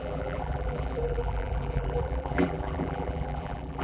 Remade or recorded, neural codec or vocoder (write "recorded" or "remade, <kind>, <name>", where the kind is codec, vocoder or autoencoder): remade, vocoder, BigVGAN v2